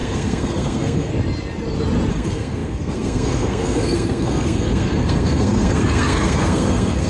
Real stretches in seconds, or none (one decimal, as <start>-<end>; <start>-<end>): 1.1-2.1

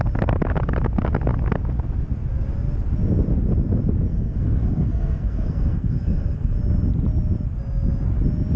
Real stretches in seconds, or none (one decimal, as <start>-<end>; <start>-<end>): 0.0-4.1; 6.6-8.6